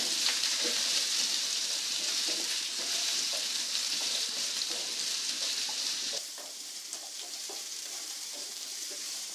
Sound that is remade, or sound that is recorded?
remade